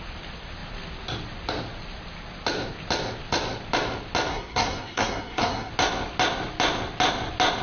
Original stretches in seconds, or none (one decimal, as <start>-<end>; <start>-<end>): 0.0-4.3; 5.7-7.6